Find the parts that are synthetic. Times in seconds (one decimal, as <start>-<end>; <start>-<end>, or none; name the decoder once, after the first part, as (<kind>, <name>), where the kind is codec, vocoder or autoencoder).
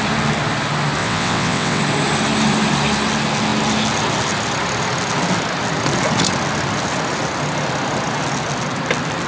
1.0-1.8 (vocoder, WaveNeXt)